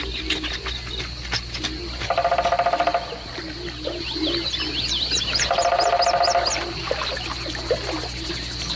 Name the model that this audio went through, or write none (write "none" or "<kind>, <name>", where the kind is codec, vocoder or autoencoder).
none